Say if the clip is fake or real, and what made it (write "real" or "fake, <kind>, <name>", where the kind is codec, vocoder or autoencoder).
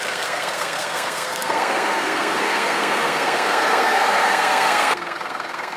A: fake, codec, SNAC